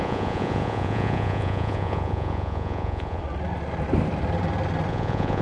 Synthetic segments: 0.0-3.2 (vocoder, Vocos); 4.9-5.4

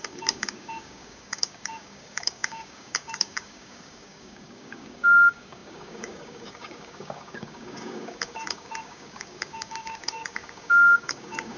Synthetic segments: 0.0-11.6 (codec, DAC)

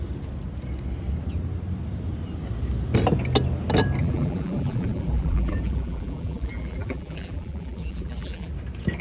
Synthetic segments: 4.0-8.5 (vocoder, BigVGAN v2)

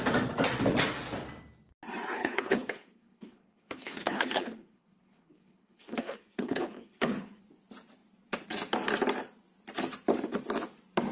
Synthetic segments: 2.2-7.4 (codec, HILCodec)

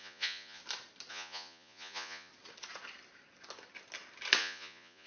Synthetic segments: 0.0-0.6 (vocoder, Vocos); 1.1-2.3; 4.4-5.1

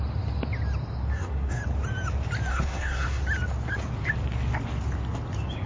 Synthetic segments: 1.1-1.6 (codec, SNAC); 2.5-3.2

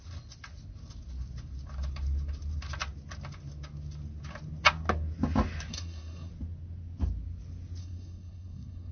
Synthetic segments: 5.7-6.3 (codec, SNAC); 7.8-8.9

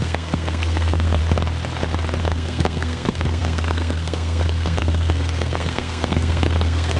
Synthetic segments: 0.0-1.2 (codec, SNAC); 2.2-7.0